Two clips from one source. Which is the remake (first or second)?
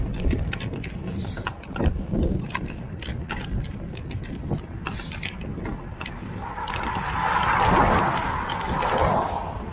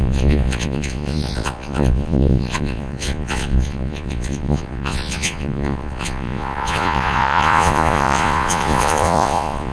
second